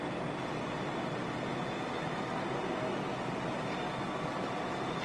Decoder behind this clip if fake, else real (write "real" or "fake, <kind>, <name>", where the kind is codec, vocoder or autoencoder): real